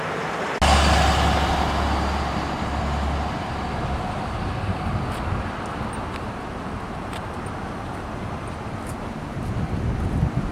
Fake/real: real